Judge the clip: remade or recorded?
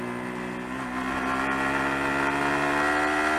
recorded